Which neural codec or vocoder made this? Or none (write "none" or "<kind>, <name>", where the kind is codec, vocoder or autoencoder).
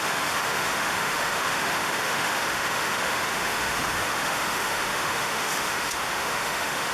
autoencoder, DAC-VAE